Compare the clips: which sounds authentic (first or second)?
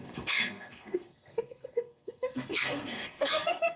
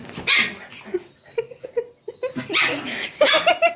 second